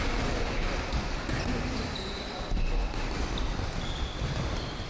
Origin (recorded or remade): recorded